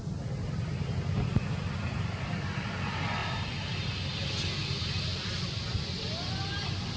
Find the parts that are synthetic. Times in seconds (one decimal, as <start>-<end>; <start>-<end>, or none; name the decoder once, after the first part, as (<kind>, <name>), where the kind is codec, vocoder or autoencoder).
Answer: none

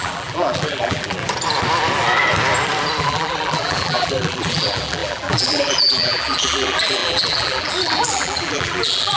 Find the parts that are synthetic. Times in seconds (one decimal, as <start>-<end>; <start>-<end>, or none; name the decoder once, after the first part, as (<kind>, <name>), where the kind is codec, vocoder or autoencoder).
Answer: 0.0-1.2 (vocoder, BigVGAN v2); 3.0-9.2